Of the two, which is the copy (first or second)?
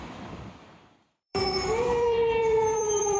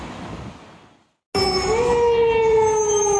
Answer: first